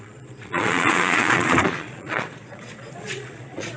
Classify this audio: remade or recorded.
remade